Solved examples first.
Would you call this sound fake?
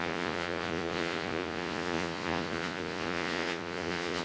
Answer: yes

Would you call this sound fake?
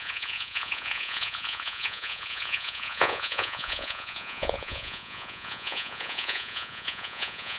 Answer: yes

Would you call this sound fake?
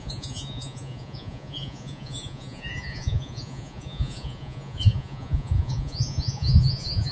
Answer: yes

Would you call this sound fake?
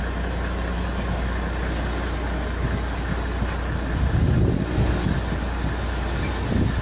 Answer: no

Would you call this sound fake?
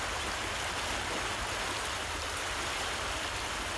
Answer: no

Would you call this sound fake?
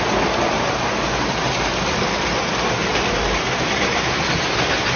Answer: no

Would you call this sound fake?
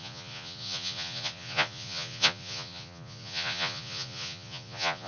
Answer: yes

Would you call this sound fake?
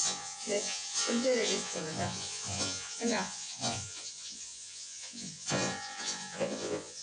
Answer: yes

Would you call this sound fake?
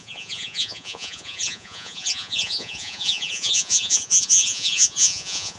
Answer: yes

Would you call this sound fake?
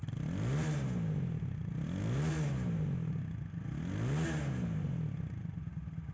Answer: no